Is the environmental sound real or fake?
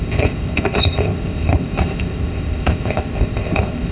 fake